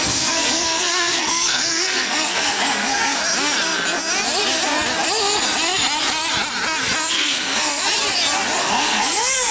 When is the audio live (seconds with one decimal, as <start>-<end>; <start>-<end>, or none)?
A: 3.2-7.1; 7.8-8.6